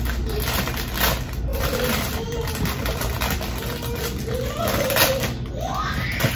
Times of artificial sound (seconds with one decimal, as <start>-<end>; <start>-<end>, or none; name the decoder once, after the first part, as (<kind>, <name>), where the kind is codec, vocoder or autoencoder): 1.5-3.0 (vocoder, BigVGAN v2)